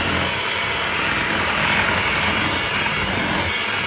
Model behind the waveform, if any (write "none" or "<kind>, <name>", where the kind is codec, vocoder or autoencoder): none